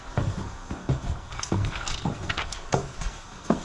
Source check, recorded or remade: remade